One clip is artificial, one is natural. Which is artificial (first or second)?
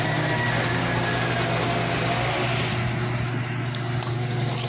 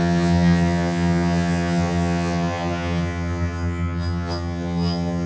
second